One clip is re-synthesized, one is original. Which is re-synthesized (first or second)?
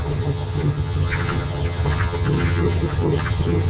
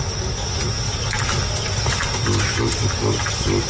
first